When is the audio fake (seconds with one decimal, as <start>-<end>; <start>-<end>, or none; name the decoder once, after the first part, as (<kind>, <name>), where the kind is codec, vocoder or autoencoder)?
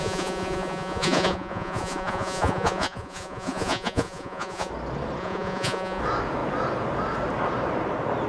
0.0-4.7 (vocoder, Vocos); 5.2-6.0